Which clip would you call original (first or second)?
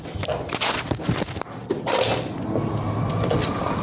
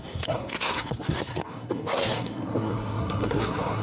first